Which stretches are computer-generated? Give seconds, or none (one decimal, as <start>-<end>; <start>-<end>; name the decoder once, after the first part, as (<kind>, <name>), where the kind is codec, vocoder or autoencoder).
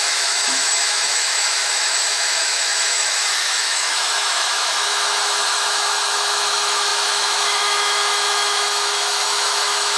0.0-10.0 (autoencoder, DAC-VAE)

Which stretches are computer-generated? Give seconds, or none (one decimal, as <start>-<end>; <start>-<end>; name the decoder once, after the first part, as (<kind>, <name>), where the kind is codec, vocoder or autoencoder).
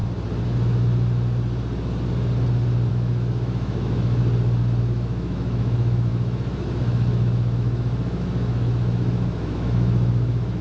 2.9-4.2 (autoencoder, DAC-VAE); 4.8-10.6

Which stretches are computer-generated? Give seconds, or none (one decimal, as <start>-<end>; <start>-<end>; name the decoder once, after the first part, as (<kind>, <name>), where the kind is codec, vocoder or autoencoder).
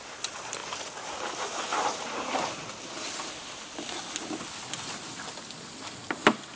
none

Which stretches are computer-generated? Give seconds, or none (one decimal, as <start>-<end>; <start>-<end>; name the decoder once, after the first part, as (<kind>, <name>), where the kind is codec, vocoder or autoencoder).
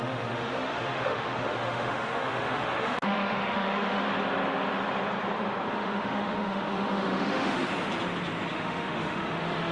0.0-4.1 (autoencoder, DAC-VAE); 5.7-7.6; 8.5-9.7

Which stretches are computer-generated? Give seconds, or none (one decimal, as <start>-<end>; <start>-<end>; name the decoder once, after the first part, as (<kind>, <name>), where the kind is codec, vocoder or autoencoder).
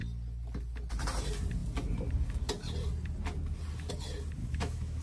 4.4-5.0 (autoencoder, DAC-VAE)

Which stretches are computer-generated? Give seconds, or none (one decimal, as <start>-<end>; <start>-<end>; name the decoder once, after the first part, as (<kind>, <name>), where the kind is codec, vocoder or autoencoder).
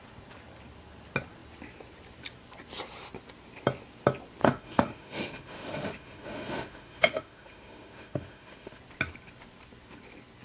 4.4-8.8 (autoencoder, DAC-VAE)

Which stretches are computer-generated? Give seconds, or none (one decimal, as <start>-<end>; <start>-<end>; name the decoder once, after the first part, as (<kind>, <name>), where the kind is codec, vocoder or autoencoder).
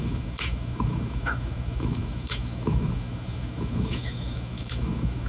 0.0-5.3 (autoencoder, DAC-VAE)